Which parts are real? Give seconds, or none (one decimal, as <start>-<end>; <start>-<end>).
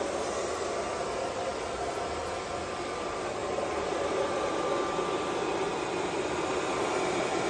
0.0-3.4; 4.7-7.5